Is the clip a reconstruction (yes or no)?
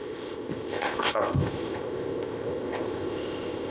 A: yes